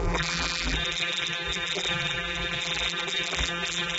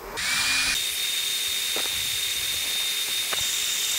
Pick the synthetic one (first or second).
first